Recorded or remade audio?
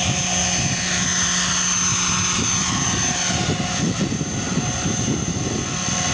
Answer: recorded